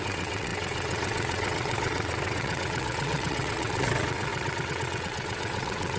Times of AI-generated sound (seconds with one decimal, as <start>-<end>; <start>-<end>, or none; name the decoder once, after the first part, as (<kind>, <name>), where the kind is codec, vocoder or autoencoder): 0.0-6.0 (vocoder, WaveNeXt)